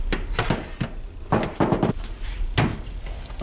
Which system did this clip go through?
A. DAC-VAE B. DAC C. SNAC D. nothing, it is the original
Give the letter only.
D